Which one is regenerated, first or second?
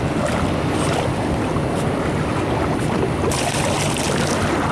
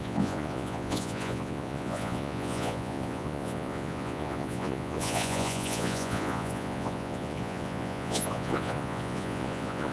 second